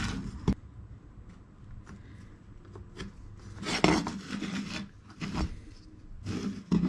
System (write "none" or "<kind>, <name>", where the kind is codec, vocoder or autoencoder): none